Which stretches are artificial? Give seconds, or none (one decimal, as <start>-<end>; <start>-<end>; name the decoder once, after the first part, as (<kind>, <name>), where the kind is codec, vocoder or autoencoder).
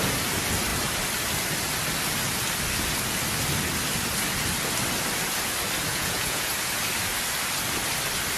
5.9-6.5 (vocoder, Vocos)